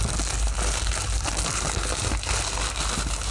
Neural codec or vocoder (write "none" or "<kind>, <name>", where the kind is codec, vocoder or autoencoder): none